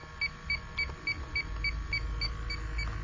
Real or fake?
real